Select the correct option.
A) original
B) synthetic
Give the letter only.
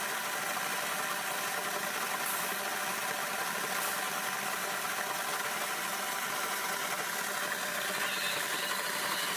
A